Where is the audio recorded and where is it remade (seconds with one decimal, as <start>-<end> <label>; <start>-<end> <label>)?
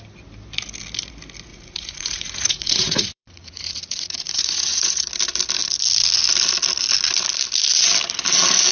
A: 0.0-1.5 recorded; 1.5-5.1 remade; 5.1-8.7 recorded